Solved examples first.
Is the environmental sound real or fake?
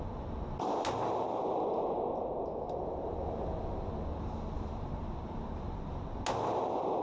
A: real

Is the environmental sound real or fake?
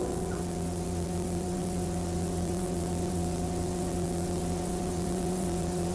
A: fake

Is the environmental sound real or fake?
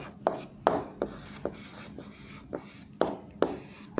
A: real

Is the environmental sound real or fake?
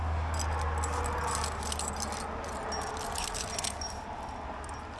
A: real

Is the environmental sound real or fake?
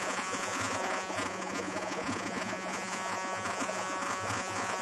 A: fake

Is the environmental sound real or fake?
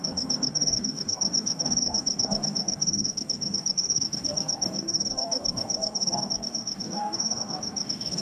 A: fake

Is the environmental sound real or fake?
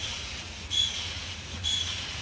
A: fake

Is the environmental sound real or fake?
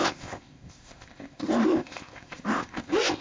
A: fake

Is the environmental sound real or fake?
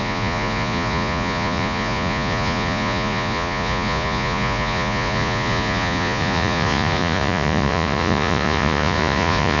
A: fake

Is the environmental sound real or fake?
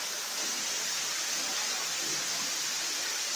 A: real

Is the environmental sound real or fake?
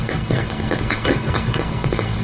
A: fake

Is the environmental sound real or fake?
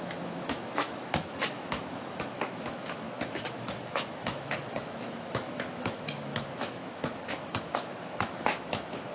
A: fake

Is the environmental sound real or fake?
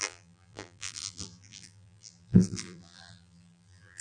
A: fake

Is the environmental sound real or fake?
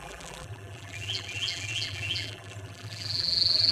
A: fake